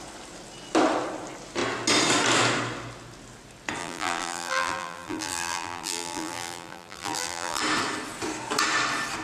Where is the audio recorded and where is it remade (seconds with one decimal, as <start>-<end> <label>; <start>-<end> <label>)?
0.0-3.8 recorded; 3.8-7.6 remade; 7.6-9.2 recorded